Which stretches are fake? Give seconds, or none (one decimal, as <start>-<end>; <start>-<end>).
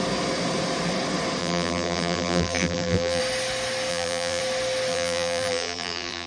1.4-3.2; 3.9-4.4; 4.9-6.3